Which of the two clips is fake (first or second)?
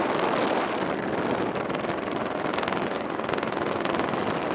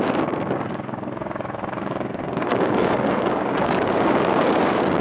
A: second